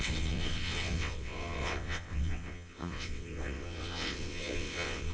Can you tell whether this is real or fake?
fake